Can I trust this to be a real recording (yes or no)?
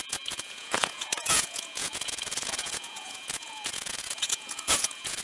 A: no